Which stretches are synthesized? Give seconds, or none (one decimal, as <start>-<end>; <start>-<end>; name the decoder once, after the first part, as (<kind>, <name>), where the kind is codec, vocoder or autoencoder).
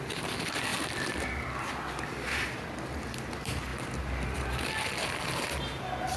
0.0-0.7 (vocoder, BigVGAN v2); 1.7-6.2